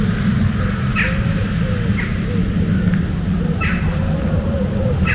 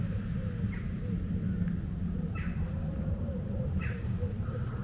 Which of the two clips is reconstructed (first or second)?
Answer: second